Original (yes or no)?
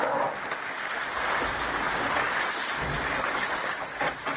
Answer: yes